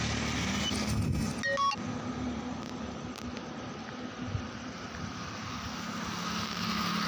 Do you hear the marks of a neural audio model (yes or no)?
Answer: no